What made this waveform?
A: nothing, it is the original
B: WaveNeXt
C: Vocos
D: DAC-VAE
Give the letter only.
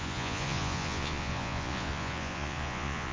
C